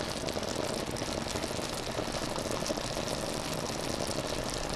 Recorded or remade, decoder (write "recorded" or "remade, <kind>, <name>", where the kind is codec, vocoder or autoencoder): recorded